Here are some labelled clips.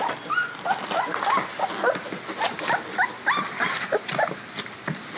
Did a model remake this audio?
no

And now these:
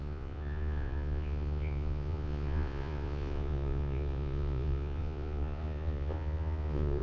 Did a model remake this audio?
yes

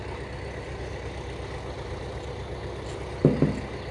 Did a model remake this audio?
no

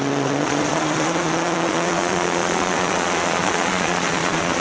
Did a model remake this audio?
yes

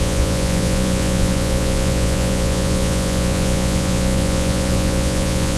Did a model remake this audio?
yes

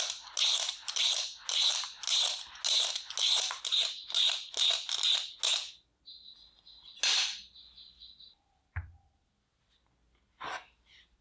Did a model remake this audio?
no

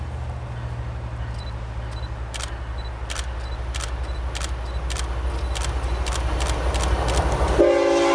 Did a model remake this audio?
no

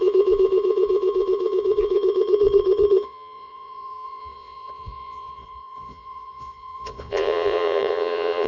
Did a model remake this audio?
yes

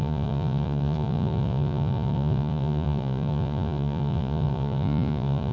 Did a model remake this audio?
yes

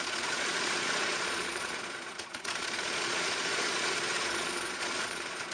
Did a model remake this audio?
yes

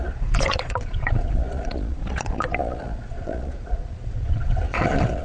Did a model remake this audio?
yes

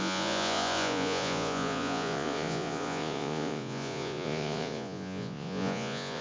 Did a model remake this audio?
yes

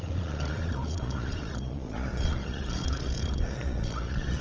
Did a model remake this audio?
yes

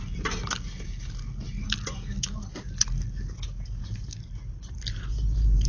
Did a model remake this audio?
no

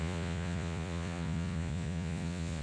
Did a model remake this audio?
yes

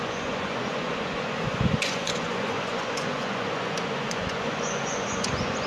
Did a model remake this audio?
yes